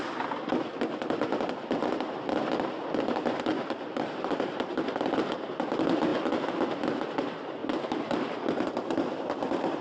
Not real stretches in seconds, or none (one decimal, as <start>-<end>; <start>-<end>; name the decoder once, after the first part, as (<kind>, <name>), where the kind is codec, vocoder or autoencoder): 3.5-5.0 (vocoder, BigVGAN v2); 7.6-9.8